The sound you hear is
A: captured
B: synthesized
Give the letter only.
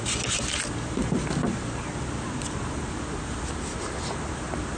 A